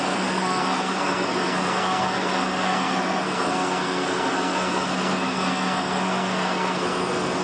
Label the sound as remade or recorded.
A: remade